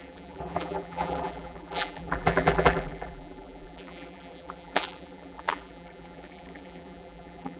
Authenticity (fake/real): fake